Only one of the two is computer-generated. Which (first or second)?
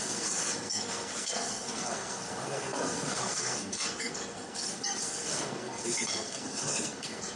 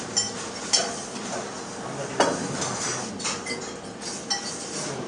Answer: first